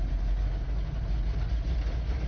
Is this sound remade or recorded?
recorded